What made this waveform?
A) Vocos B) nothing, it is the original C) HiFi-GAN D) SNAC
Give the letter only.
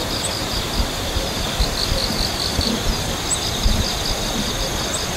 B